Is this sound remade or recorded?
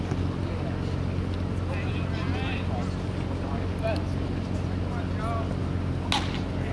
recorded